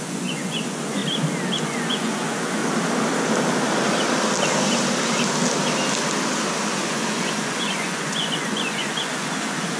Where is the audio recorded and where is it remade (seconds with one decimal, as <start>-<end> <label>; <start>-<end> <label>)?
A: 0.0-1.0 remade; 1.0-1.6 recorded; 1.6-2.6 remade; 2.6-6.7 recorded; 6.7-9.8 remade

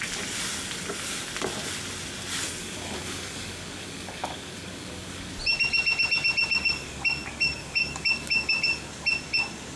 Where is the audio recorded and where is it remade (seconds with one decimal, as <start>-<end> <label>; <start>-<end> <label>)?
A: 0.0-2.6 recorded; 2.6-5.3 remade; 5.3-6.5 recorded; 6.5-8.9 remade; 8.9-9.8 recorded

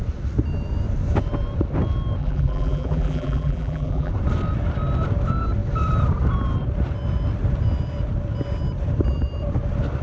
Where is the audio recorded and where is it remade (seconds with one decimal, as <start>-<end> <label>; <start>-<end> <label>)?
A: 0.0-2.2 recorded; 2.2-4.1 remade; 4.1-10.0 recorded